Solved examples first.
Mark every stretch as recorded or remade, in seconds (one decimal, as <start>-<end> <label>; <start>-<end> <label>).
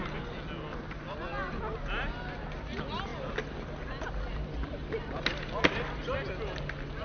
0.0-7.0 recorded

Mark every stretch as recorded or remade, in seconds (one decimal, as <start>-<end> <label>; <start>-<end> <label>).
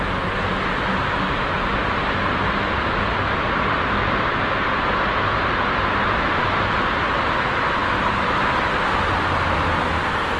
0.0-10.4 recorded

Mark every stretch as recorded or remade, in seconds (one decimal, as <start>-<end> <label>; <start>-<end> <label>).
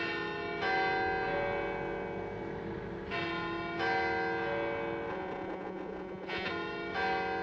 0.0-5.1 recorded; 5.1-6.5 remade; 6.5-7.4 recorded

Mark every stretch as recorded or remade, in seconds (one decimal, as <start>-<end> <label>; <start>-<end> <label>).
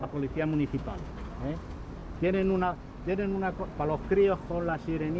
0.0-1.1 remade; 1.1-5.2 recorded